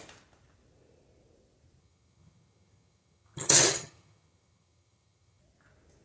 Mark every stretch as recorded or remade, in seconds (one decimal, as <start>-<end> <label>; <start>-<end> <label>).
0.0-1.8 recorded; 1.8-5.4 remade; 5.4-6.0 recorded